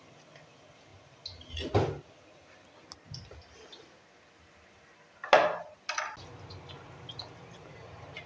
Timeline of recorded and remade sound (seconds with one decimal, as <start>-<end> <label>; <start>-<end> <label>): 0.0-8.3 recorded